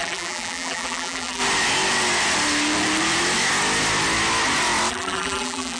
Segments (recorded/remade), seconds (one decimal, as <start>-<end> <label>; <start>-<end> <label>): 0.0-1.4 remade; 1.4-4.9 recorded; 4.9-5.8 remade